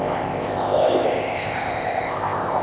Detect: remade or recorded remade